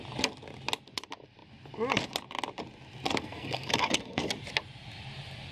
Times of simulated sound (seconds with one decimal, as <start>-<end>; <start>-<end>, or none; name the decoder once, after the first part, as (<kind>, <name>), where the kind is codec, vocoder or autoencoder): 3.2-4.3 (codec, SNAC)